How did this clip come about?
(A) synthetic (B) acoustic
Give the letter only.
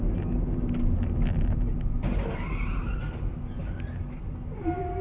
B